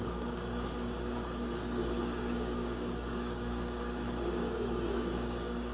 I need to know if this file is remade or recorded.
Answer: remade